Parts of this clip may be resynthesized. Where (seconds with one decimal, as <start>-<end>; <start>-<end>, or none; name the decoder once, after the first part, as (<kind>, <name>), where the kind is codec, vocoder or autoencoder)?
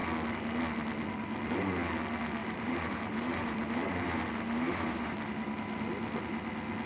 2.4-5.3 (vocoder, BigVGAN v2)